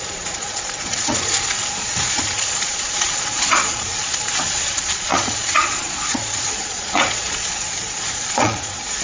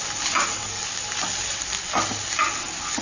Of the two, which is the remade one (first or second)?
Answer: first